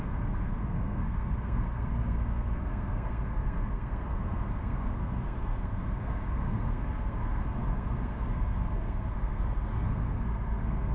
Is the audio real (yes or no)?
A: no